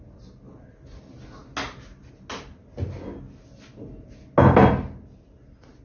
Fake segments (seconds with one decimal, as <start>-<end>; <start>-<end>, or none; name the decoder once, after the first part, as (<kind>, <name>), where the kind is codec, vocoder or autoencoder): none